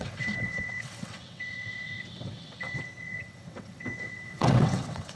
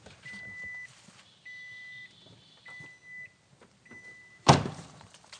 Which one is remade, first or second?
first